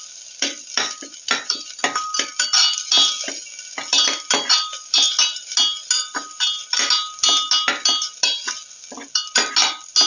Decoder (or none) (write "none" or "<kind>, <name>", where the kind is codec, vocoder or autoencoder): none